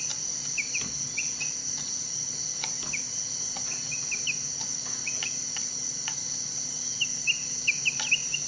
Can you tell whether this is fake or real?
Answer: real